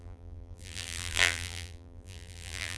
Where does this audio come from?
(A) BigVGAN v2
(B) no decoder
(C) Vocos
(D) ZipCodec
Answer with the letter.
A